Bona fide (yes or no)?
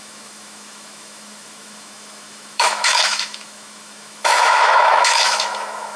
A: no